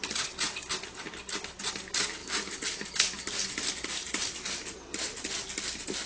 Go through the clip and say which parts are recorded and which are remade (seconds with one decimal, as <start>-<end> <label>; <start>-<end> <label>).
0.0-6.1 recorded